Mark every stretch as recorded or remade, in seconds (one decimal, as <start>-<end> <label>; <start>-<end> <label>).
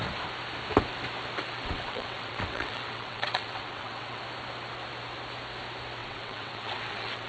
0.0-1.5 recorded; 1.5-4.2 remade; 4.2-6.0 recorded; 6.0-7.3 remade